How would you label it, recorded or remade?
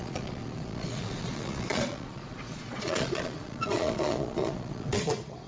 remade